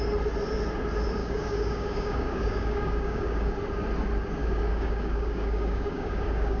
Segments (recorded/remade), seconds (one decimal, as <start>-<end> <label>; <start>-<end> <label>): 0.0-1.2 recorded; 1.2-3.5 remade; 3.5-4.4 recorded; 4.4-6.6 remade